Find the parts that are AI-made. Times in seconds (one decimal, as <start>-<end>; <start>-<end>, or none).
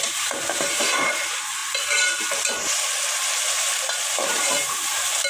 0.0-1.6; 4.0-5.3